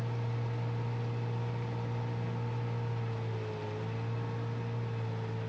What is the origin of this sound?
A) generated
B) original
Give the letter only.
B